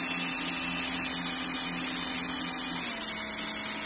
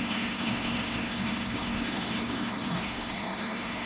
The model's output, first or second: second